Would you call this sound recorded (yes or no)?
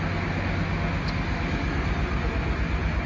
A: yes